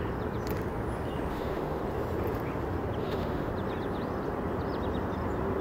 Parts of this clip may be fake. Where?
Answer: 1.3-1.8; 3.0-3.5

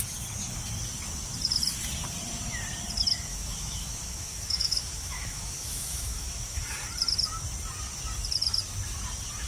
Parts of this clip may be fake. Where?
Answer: 3.3-6.6

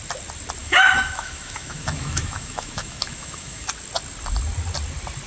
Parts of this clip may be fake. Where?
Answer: 0.6-3.7

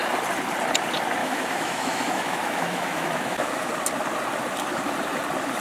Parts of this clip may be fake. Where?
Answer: 1.2-3.7

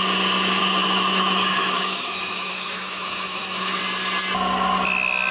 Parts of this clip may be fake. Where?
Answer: 0.6-3.8

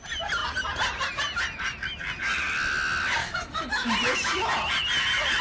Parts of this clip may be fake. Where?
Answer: 3.2-3.9